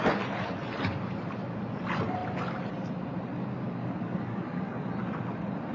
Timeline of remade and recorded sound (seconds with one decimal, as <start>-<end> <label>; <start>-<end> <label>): 0.0-3.8 recorded; 3.8-4.6 remade; 4.6-5.7 recorded